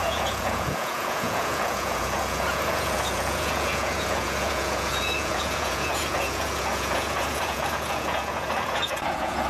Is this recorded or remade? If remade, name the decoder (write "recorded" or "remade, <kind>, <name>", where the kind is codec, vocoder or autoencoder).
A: remade, vocoder, Vocos